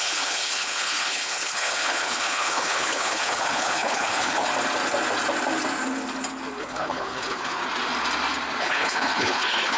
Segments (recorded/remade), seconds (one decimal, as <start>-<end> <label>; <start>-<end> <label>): 0.0-4.5 remade; 4.5-6.6 recorded; 6.6-7.6 remade; 7.6-8.6 recorded; 8.6-9.8 remade